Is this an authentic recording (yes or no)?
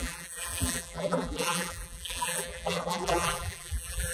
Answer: no